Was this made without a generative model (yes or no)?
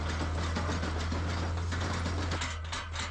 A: yes